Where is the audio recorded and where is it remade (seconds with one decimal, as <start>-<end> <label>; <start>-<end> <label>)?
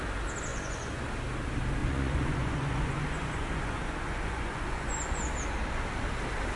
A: 0.0-0.5 recorded; 0.5-1.0 remade; 1.0-1.8 recorded; 1.8-5.3 remade; 5.3-6.6 recorded